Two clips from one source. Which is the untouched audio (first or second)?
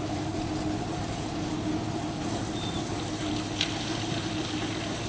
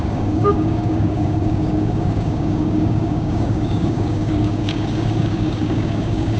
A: first